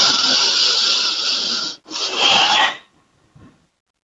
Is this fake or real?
real